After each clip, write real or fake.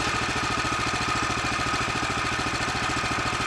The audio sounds fake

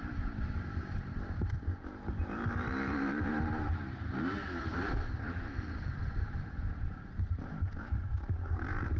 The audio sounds fake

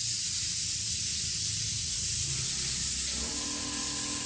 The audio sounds real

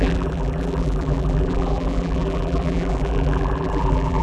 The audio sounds fake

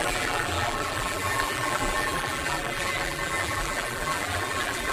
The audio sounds fake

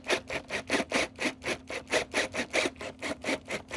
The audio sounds real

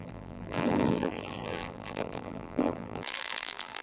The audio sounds fake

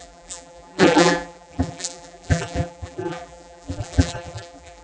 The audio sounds fake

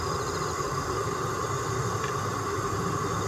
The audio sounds real